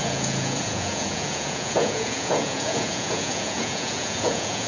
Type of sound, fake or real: fake